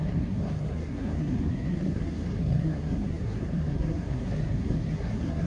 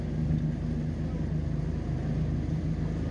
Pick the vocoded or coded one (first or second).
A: first